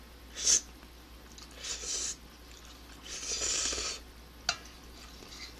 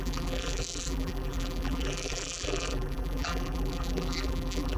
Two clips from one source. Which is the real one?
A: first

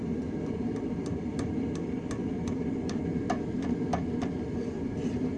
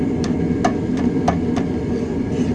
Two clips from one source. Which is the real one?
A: second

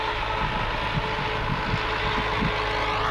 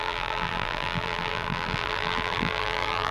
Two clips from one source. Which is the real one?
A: first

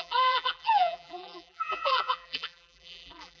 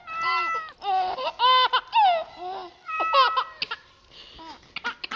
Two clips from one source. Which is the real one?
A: second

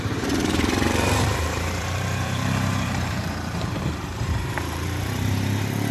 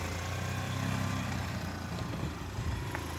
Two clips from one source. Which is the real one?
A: second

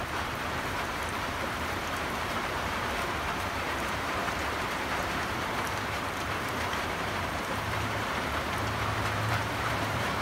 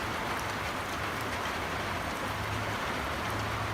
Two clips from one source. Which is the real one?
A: second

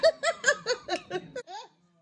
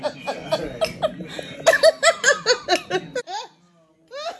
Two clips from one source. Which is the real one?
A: second